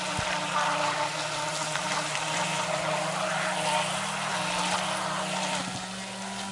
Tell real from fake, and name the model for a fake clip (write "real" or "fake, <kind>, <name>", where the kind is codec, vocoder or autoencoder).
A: real